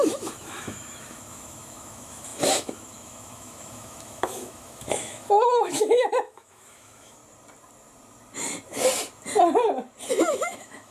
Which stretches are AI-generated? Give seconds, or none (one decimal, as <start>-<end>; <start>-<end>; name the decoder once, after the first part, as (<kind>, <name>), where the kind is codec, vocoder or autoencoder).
0.0-7.2 (autoencoder, DAC-VAE); 10.1-10.9